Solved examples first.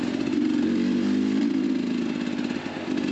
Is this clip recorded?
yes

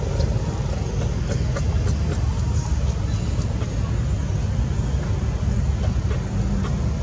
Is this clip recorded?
yes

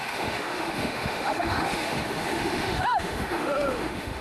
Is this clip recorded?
no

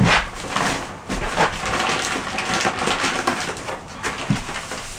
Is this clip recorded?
yes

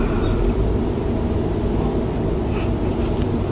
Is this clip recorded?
no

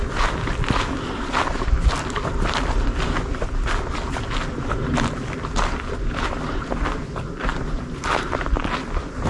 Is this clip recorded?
yes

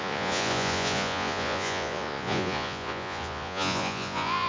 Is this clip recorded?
no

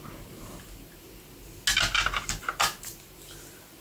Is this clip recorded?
yes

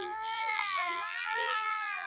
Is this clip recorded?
no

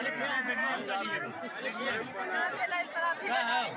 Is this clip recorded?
yes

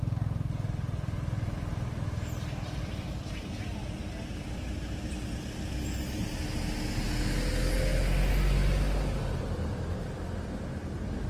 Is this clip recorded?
yes